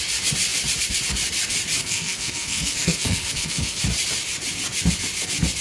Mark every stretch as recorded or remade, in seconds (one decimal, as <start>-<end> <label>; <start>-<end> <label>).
0.0-1.8 recorded; 1.8-3.8 remade; 3.8-5.6 recorded

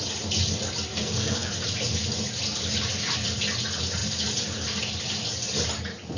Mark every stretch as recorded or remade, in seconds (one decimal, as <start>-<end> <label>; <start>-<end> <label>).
0.0-0.9 recorded; 0.9-1.5 remade; 1.5-6.2 recorded

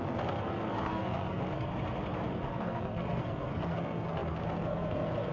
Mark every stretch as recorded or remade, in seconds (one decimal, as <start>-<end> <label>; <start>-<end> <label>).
0.0-1.7 remade; 1.7-2.3 recorded; 2.3-5.3 remade

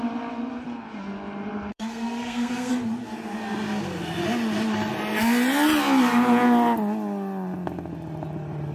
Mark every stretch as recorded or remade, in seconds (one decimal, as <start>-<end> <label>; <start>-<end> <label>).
0.0-1.7 recorded; 1.7-2.7 remade; 2.7-8.7 recorded

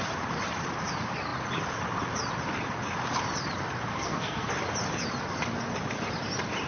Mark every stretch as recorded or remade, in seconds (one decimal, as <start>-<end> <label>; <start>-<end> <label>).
0.0-3.9 recorded; 3.9-4.5 remade; 4.5-6.7 recorded

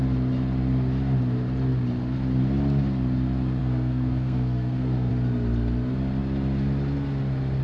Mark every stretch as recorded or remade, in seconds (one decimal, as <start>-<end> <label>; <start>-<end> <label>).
0.0-3.6 recorded; 3.6-5.1 remade; 5.1-7.6 recorded

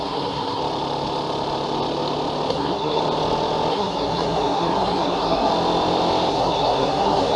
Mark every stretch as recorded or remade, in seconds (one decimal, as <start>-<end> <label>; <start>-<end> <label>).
0.0-0.6 remade; 0.6-2.5 recorded; 2.5-3.0 remade; 3.0-3.7 recorded; 3.7-5.5 remade; 5.5-6.3 recorded; 6.3-7.4 remade